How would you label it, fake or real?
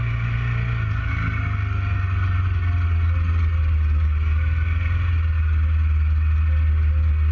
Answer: real